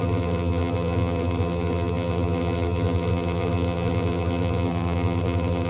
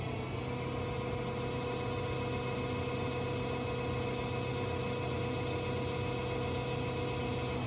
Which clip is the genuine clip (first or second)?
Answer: second